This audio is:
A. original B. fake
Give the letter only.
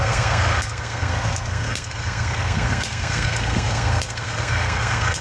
B